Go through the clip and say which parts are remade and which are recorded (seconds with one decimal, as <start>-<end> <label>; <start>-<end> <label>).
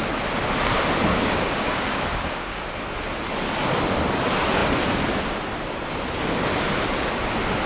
0.0-1.1 recorded; 1.1-2.7 remade; 2.7-7.7 recorded